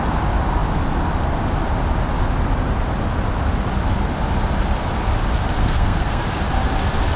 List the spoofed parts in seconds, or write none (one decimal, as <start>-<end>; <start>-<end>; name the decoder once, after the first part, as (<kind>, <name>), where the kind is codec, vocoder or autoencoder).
5.6-6.2 (codec, SNAC)